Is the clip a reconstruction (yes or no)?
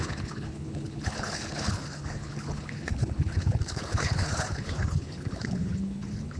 yes